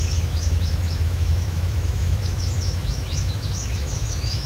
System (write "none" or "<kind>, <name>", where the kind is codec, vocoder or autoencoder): autoencoder, DAC-VAE